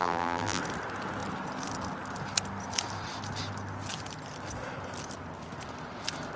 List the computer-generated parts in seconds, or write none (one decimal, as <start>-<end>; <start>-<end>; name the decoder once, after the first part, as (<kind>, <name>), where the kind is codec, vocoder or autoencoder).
0.0-0.6 (vocoder, BigVGAN v2)